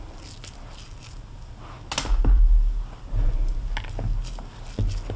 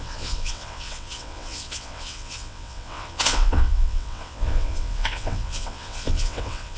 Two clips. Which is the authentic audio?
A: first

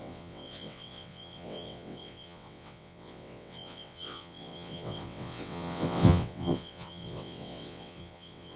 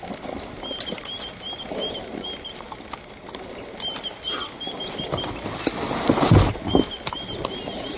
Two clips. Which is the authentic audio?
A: second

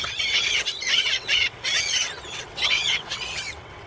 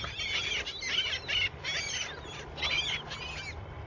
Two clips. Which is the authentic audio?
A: second